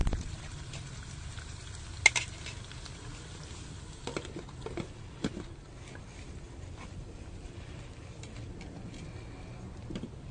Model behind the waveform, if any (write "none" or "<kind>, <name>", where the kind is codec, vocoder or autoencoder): none